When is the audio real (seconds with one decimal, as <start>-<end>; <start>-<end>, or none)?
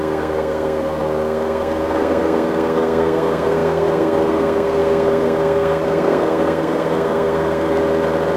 7.8-8.4